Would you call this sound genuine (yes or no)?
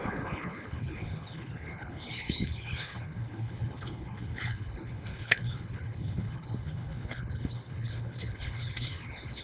no